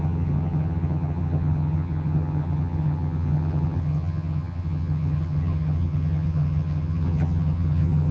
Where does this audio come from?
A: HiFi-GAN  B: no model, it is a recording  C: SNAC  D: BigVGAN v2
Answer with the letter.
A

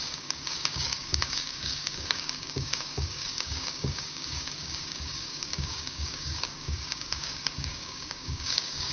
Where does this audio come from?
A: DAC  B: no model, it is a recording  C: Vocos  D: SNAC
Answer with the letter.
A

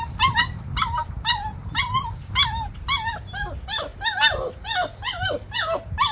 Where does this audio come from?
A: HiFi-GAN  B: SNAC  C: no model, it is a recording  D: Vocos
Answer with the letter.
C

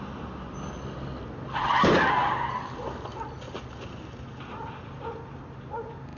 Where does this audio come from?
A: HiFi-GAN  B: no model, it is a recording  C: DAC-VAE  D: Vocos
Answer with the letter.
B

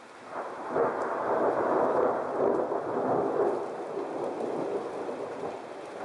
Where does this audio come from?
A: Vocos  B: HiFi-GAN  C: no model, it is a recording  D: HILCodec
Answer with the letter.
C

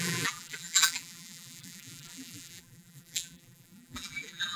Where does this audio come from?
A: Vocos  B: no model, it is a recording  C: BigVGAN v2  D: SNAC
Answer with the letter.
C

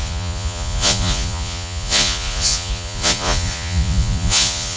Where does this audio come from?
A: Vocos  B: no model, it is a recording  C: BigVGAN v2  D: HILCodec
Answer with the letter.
A